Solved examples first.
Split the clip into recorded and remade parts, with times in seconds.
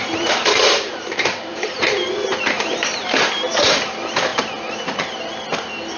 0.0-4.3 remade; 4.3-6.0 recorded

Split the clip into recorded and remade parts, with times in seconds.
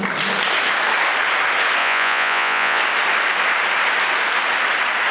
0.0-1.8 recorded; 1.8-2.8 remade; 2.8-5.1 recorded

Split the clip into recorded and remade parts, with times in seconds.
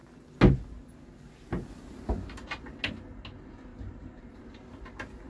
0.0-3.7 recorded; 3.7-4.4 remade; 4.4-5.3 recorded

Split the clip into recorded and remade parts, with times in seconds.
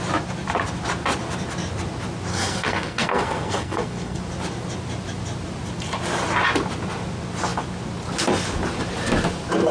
0.0-2.3 recorded; 2.3-4.2 remade; 4.2-9.7 recorded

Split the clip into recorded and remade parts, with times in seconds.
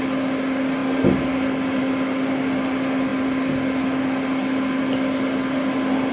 0.0-6.1 recorded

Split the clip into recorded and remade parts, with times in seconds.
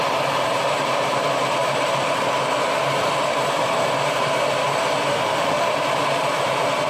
0.0-5.1 recorded; 5.1-5.7 remade; 5.7-6.9 recorded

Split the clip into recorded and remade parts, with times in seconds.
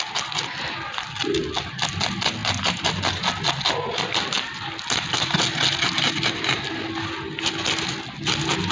0.0-8.7 recorded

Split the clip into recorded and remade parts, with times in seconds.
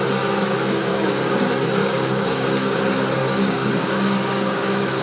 0.0-0.9 recorded; 0.9-1.4 remade; 1.4-1.8 recorded; 1.8-2.8 remade; 2.8-3.2 recorded; 3.2-5.0 remade